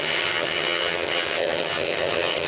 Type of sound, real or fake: fake